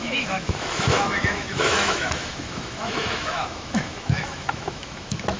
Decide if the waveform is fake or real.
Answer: fake